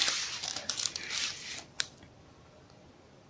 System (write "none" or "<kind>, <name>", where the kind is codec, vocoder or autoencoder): none